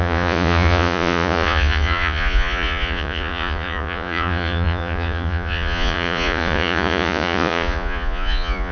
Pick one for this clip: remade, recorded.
remade